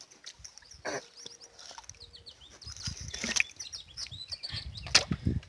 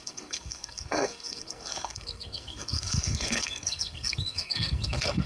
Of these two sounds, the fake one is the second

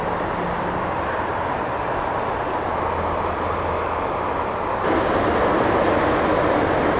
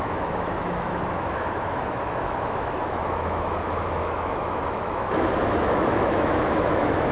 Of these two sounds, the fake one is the second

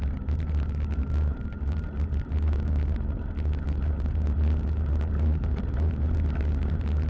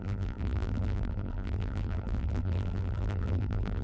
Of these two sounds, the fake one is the second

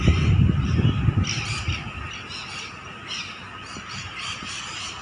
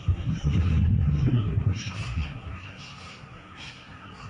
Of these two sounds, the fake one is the second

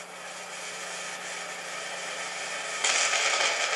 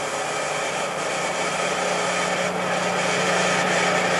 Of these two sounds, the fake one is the second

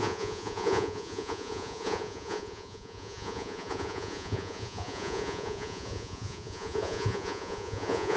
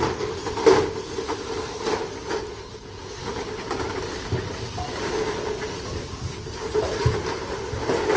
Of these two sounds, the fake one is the first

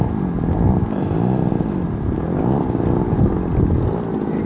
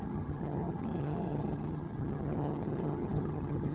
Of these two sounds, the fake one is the second